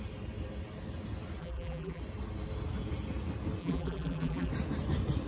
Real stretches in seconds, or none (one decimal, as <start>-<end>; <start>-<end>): 0.0-1.4; 2.0-3.6; 4.5-5.3